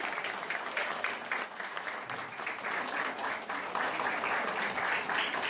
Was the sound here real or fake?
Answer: real